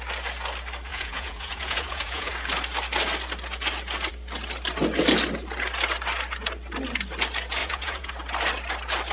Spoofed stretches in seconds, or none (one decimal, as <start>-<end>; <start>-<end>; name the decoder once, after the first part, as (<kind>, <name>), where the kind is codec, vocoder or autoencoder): 0.9-2.3 (vocoder, Vocos); 7.6-8.1

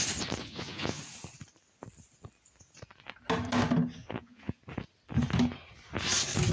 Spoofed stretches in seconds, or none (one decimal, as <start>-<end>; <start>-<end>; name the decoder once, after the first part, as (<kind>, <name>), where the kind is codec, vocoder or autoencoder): 0.4-1.0 (vocoder, Vocos); 4.0-4.6